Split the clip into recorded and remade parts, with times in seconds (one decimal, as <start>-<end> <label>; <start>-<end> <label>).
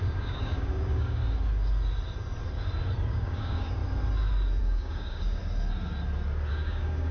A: 0.0-1.2 remade; 1.2-3.1 recorded; 3.1-3.8 remade; 3.8-4.6 recorded; 4.6-5.4 remade; 5.4-6.5 recorded; 6.5-7.1 remade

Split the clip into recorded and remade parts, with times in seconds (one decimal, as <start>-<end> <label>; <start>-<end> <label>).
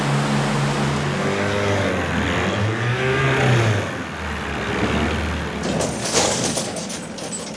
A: 0.0-1.2 recorded; 1.2-1.9 remade; 1.9-2.6 recorded; 2.6-3.2 remade; 3.2-6.0 recorded; 6.0-6.9 remade; 6.9-7.6 recorded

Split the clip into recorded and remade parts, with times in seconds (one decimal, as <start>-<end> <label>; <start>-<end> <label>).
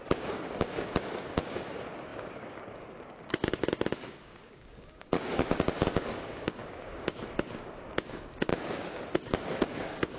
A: 0.0-10.2 remade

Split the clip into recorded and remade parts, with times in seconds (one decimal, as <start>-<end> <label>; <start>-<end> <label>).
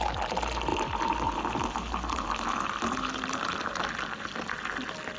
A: 0.0-5.2 recorded